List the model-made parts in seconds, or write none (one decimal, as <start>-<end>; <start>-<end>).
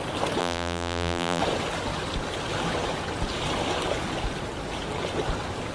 0.4-1.4